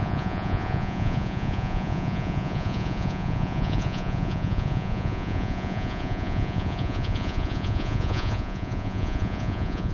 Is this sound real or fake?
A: fake